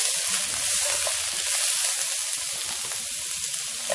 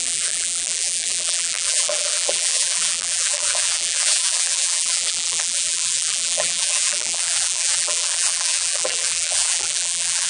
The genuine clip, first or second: first